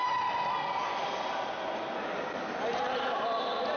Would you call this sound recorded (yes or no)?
yes